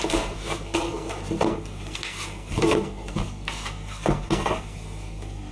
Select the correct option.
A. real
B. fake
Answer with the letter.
B